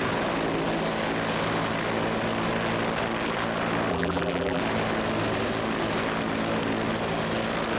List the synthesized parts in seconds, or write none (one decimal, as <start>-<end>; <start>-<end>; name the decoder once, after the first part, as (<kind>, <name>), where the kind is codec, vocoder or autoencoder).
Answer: 3.9-4.6 (vocoder, BigVGAN v2)